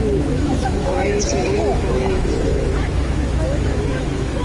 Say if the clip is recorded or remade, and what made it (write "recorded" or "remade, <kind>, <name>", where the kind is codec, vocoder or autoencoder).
remade, autoencoder, DAC-VAE